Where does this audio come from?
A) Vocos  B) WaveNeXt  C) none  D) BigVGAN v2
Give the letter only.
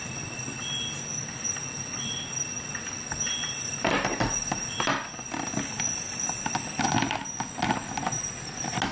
C